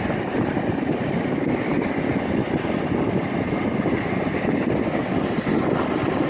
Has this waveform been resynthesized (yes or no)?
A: no